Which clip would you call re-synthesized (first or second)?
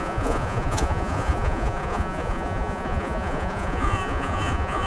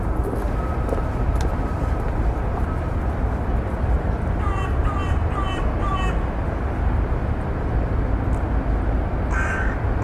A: first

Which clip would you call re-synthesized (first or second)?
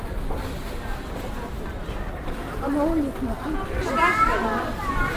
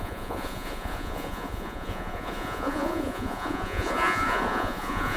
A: second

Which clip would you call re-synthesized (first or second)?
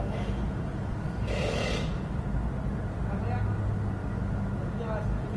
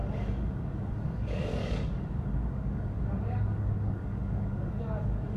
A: second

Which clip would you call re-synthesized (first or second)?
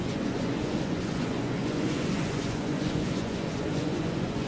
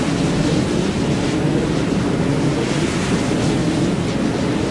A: first